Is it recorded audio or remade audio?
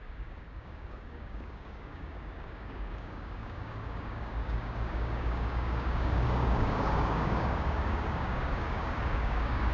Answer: remade